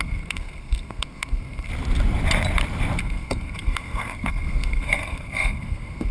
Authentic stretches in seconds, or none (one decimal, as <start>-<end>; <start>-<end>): 1.7-3.0